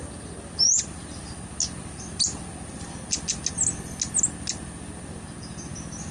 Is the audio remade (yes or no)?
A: no